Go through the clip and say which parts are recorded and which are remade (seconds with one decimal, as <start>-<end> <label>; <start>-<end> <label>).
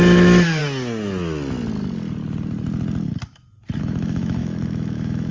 0.0-0.6 remade; 0.6-3.8 recorded; 3.8-5.3 remade